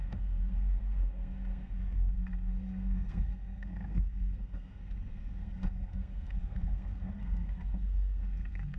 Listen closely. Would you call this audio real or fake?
fake